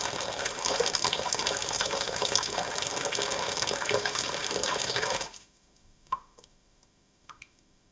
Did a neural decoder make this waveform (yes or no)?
yes